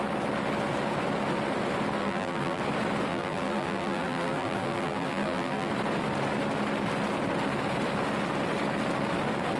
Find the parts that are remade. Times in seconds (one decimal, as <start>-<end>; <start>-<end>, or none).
2.0-2.6; 3.1-5.7